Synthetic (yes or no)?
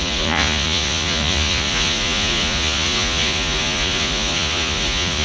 yes